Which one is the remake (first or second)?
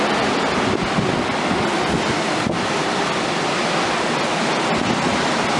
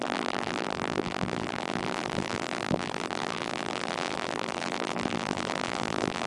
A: second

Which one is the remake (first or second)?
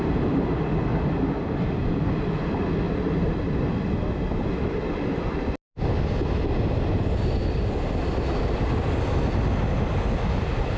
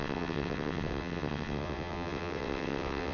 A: second